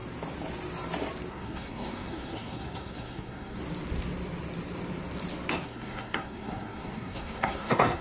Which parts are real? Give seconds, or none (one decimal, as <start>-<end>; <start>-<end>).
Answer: 0.0-1.3; 3.6-5.5